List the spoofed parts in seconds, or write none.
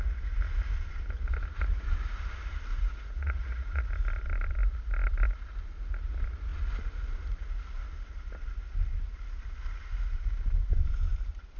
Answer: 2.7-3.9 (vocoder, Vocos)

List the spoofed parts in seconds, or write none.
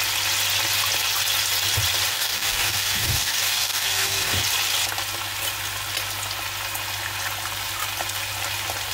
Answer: 2.1-4.4 (codec, DAC)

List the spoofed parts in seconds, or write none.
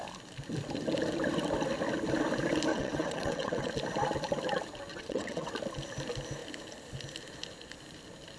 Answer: 2.7-3.7 (vocoder, WaveNeXt); 4.9-5.5